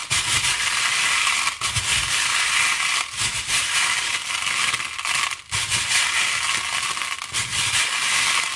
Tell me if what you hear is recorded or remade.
recorded